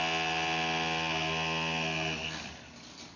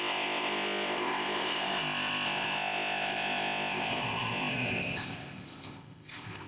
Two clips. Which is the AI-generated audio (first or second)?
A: second